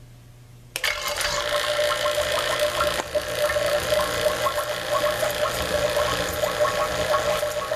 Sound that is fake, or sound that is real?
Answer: real